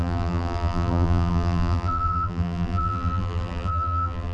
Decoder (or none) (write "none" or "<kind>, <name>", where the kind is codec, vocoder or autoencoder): vocoder, BigVGAN v2